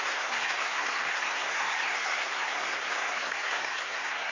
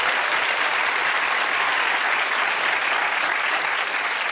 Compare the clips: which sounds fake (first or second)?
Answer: first